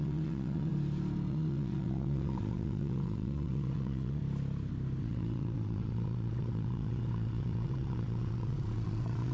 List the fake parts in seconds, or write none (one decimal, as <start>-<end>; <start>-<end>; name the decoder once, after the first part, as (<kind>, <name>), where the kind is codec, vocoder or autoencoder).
0.0-0.7 (vocoder, WaveNeXt); 1.3-4.2; 5.0-9.3